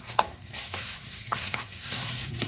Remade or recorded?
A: remade